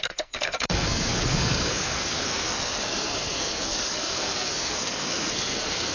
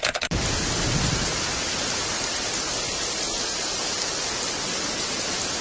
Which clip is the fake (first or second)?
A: first